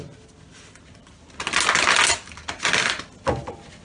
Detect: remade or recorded recorded